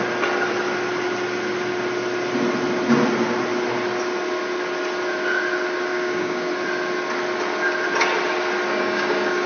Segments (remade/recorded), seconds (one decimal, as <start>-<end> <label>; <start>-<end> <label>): 0.0-5.9 recorded; 5.9-6.5 remade; 6.5-8.7 recorded; 8.7-9.5 remade